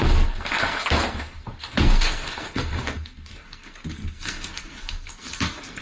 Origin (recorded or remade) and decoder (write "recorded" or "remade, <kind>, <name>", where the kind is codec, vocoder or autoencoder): remade, codec, SNAC